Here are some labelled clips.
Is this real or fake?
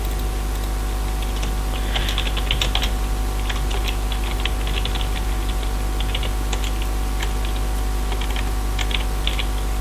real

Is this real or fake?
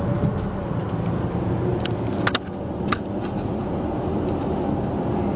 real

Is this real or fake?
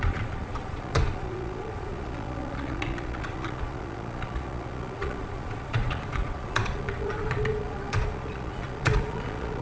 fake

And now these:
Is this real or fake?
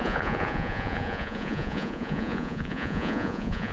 fake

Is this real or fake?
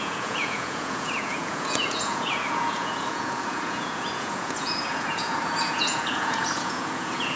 fake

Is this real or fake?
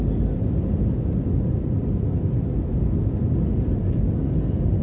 real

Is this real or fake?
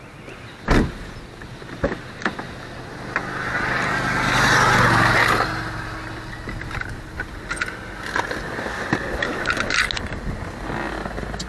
real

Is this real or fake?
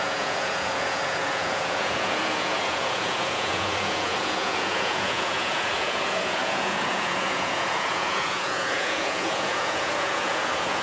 fake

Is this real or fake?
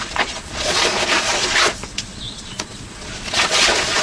fake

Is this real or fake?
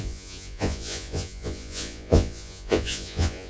fake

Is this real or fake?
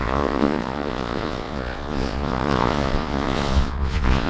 fake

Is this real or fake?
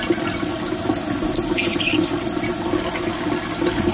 real